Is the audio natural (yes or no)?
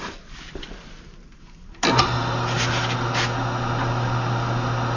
yes